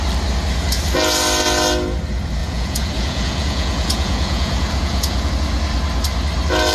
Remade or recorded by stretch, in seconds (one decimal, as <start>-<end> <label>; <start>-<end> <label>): 0.0-2.4 recorded; 2.4-5.3 remade; 5.3-6.7 recorded